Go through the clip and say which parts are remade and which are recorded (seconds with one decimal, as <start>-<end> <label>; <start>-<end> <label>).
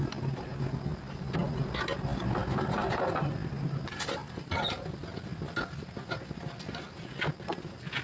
0.0-8.0 recorded